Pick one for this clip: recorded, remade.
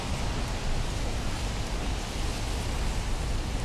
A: recorded